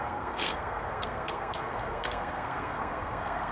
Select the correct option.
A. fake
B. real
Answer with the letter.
A